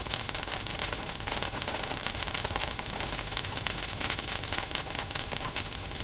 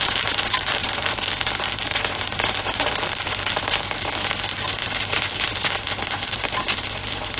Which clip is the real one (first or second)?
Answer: second